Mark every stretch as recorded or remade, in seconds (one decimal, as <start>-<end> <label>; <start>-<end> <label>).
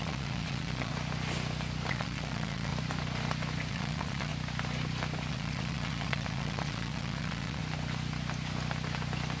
0.0-0.9 remade; 0.9-1.9 recorded; 1.9-2.7 remade; 2.7-3.7 recorded; 3.7-4.3 remade; 4.3-5.3 recorded; 5.3-7.6 remade; 7.6-9.4 recorded